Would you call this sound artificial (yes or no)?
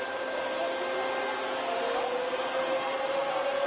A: no